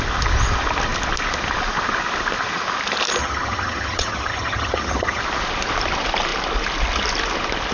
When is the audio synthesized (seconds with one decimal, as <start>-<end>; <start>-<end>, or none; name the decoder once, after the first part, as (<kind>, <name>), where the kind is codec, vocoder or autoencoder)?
3.2-5.2 (vocoder, HiFi-GAN)